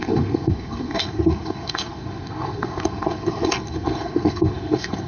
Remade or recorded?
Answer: remade